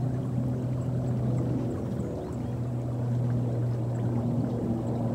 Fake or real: real